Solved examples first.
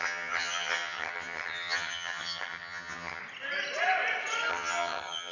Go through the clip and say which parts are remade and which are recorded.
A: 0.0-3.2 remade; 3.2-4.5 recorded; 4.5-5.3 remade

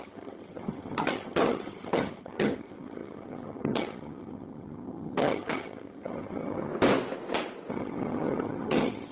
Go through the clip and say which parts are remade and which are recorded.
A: 0.0-6.7 remade; 6.7-7.7 recorded; 7.7-9.1 remade

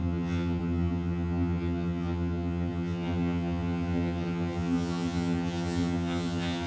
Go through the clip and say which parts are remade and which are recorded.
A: 0.0-6.7 remade